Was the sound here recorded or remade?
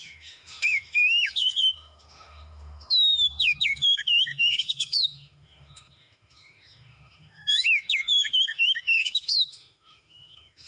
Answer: remade